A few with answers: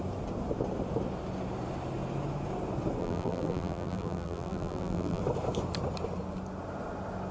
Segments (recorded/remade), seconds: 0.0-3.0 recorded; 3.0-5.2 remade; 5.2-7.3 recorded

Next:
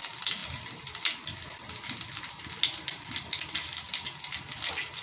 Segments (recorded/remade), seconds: 0.0-5.0 recorded

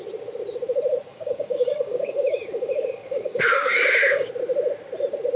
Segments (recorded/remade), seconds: 0.0-1.1 recorded; 1.1-4.3 remade; 4.3-5.4 recorded

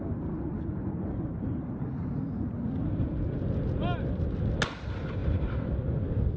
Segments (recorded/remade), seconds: 0.0-6.4 recorded

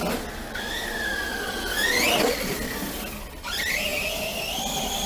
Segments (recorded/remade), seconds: 0.0-5.1 recorded